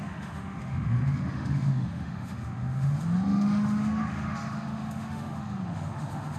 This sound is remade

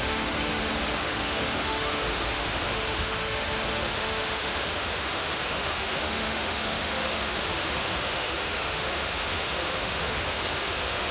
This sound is remade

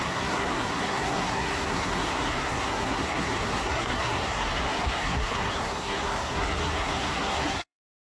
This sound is remade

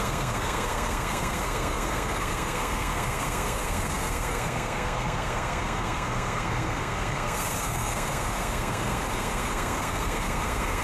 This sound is remade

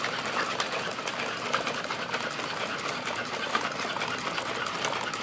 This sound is recorded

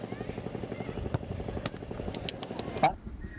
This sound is recorded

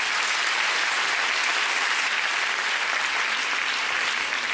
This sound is recorded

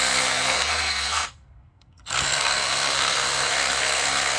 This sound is remade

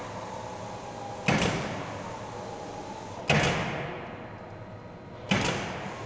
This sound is recorded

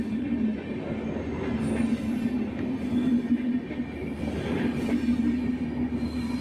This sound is recorded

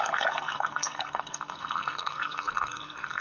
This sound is remade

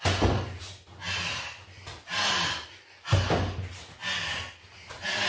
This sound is recorded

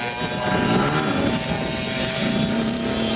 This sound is recorded